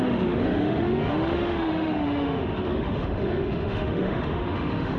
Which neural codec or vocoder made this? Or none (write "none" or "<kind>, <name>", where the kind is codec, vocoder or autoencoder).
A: autoencoder, DAC-VAE